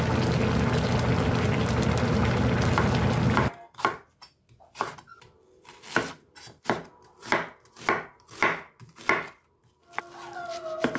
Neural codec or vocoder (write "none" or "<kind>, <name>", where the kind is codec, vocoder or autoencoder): none